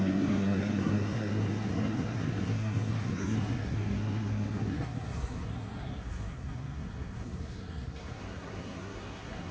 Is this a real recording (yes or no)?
no